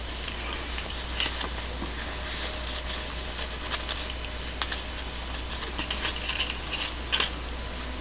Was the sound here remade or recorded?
recorded